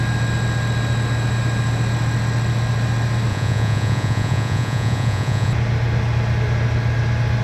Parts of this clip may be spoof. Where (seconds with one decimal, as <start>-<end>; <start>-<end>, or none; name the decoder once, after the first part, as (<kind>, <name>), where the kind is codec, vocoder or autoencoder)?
3.3-5.5 (vocoder, Vocos)